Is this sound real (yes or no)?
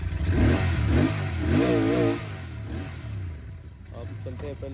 yes